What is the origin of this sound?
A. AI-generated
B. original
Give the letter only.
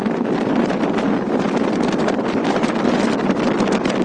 B